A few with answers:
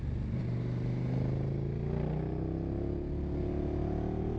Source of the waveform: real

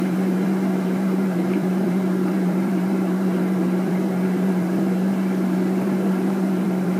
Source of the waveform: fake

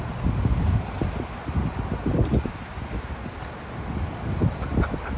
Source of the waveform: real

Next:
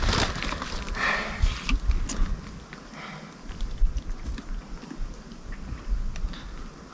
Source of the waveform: real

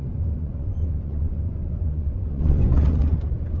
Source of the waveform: fake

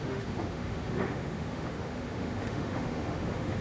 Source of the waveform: fake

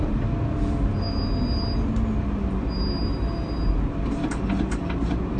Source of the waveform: real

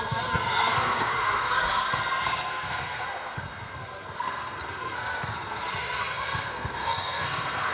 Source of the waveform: fake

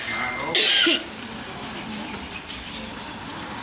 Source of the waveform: real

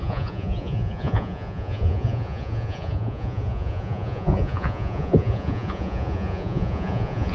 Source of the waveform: fake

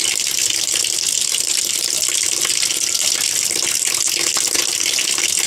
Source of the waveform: real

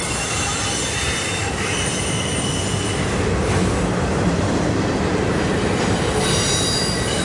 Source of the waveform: real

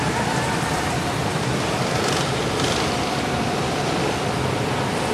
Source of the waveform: fake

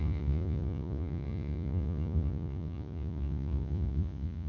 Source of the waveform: fake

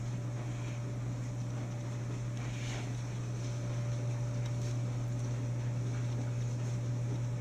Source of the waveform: real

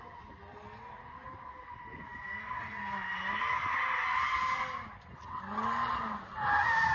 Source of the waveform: real